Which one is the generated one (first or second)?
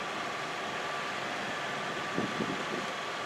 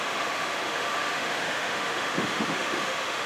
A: second